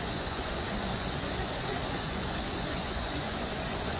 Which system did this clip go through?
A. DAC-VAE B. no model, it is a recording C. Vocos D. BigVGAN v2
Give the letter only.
C